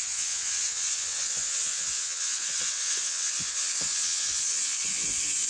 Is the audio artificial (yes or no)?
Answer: yes